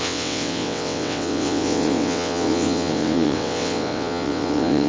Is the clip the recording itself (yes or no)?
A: no